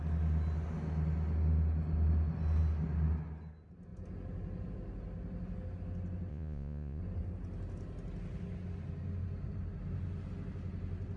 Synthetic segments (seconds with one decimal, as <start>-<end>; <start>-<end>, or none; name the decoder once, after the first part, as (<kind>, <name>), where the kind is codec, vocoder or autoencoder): 6.3-7.0 (vocoder, Vocos)